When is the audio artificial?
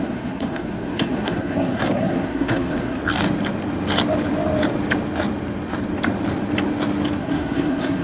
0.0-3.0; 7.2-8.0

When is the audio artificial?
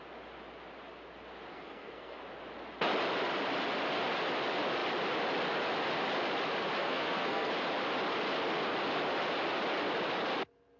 1.5-2.2; 6.8-7.5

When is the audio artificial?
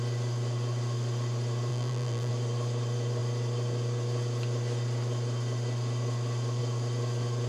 1.7-2.3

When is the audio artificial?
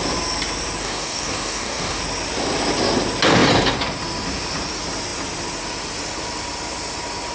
0.8-2.0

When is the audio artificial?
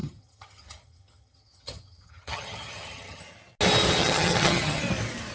0.0-3.2; 4.0-4.8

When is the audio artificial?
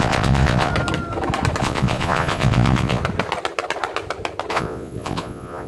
0.0-0.7; 1.6-3.0; 4.5-5.7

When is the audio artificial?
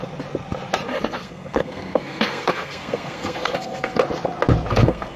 0.9-4.0; 4.7-5.2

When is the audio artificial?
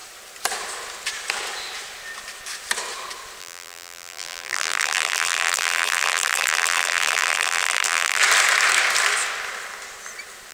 3.4-8.2